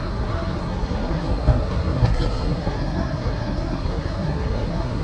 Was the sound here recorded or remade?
remade